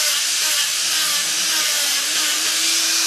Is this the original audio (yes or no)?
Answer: no